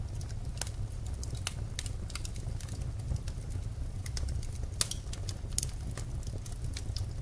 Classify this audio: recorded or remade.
recorded